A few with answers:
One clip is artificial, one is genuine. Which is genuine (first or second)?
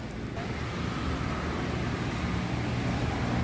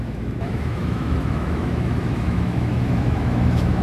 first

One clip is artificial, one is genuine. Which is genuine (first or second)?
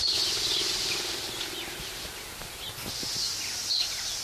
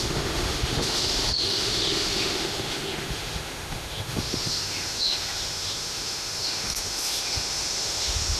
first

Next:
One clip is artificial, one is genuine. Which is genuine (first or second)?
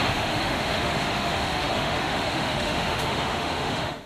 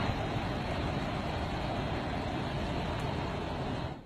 second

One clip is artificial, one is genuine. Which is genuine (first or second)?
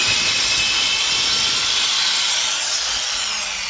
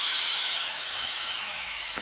first